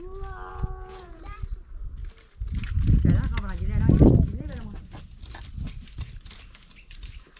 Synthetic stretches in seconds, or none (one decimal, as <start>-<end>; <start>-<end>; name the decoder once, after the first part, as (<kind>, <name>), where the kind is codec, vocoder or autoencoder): 0.5-1.2 (vocoder, Vocos)

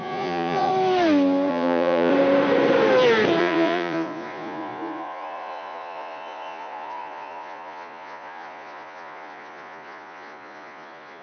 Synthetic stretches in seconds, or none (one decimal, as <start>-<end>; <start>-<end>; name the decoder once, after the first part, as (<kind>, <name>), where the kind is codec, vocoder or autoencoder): 0.0-0.7 (vocoder, Vocos); 1.5-2.1; 3.4-11.2

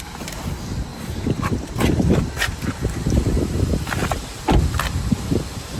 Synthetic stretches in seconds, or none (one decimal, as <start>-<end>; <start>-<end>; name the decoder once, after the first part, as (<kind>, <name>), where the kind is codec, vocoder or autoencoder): 0.9-2.2 (vocoder, BigVGAN v2); 4.0-5.8

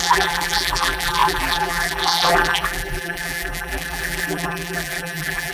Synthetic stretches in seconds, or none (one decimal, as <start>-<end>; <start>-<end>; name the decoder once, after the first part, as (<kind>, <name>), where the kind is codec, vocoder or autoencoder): 0.0-5.5 (vocoder, BigVGAN v2)

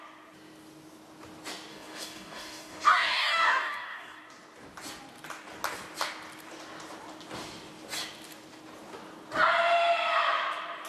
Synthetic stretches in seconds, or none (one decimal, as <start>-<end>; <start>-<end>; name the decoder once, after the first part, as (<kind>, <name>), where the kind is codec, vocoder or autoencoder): 1.7-4.2 (codec, DAC)